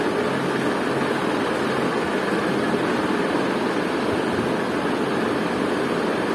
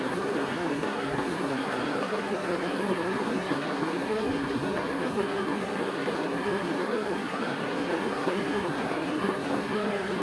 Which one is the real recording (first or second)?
first